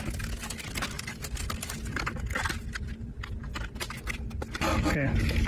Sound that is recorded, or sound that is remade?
recorded